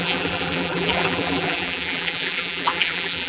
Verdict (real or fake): fake